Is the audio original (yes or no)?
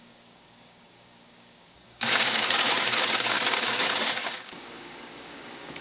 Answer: no